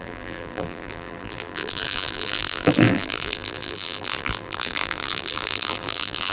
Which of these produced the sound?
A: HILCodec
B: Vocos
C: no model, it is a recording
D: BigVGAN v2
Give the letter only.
D